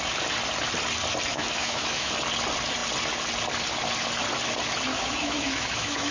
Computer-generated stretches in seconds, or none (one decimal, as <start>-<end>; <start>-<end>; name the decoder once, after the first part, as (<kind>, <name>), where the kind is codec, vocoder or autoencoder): 1.3-2.1 (autoencoder, DAC-VAE); 4.9-6.1